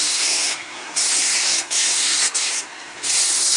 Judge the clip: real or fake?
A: fake